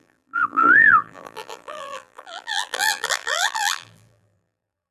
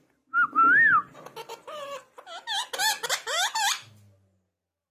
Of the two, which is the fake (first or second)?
first